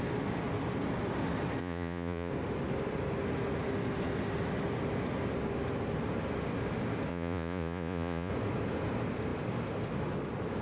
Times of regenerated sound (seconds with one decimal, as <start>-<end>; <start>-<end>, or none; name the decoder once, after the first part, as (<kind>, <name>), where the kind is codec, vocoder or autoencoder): 1.6-2.3 (vocoder, Vocos); 7.1-8.3

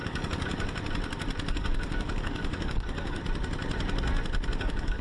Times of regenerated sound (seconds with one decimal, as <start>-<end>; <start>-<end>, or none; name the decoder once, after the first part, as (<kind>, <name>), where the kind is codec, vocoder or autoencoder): 0.0-0.5 (codec, DAC); 1.5-3.2; 4.6-5.0